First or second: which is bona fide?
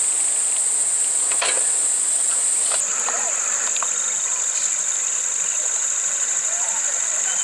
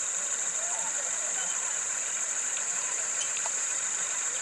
first